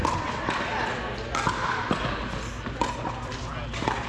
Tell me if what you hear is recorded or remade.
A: recorded